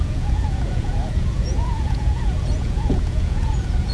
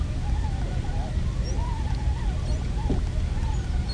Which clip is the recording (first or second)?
second